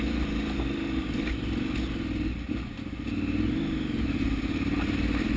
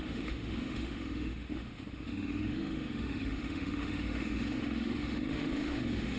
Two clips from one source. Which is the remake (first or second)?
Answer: second